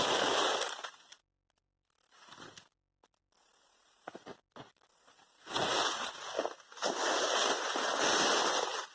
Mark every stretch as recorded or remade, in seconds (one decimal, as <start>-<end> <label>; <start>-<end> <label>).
0.0-5.2 recorded; 5.2-5.7 remade; 5.7-8.9 recorded